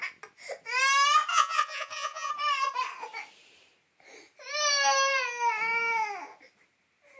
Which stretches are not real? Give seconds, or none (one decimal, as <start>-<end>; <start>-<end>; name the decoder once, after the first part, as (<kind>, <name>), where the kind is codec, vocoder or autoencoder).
1.3-2.3 (vocoder, Vocos)